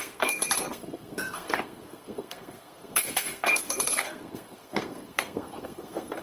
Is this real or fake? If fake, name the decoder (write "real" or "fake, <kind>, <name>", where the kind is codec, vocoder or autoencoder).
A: fake, codec, SNAC